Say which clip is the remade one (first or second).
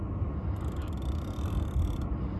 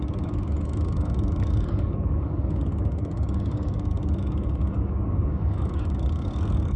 second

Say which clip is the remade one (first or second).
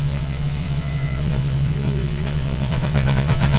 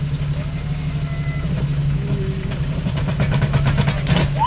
first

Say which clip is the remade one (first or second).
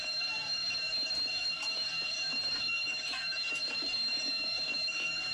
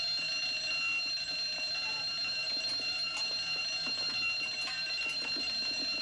first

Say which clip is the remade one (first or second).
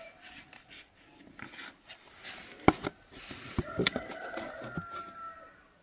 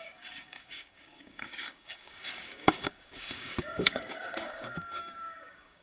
second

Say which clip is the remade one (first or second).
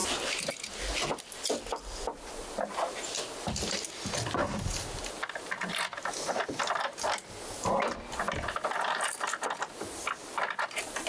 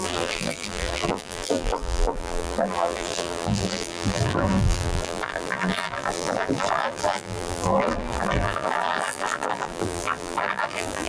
second